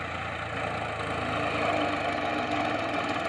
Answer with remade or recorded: recorded